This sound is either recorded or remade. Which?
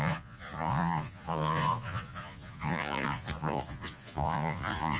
remade